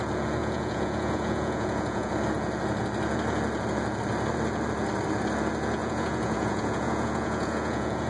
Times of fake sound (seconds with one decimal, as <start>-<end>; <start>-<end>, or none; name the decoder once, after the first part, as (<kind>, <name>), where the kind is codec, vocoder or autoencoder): 0.4-2.1 (vocoder, Vocos); 5.8-8.1